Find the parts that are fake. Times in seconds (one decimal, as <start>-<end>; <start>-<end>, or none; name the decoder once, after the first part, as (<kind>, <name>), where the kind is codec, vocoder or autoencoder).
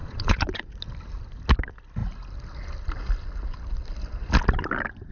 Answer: 0.0-0.7 (vocoder, Vocos)